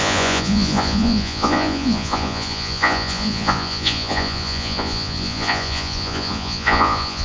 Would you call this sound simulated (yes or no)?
yes